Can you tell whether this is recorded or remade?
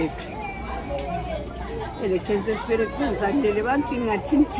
recorded